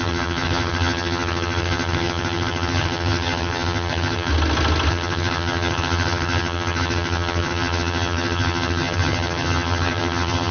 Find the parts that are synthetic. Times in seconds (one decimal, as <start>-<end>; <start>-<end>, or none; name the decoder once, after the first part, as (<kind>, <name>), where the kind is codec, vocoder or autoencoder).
0.0-4.3 (vocoder, HiFi-GAN); 4.9-10.5